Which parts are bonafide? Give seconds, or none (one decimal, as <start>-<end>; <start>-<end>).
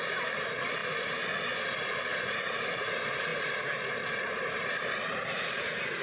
none